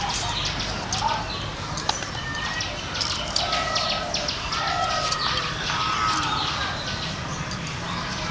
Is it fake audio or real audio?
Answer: real